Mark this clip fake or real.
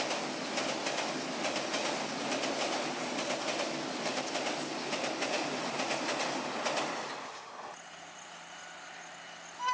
real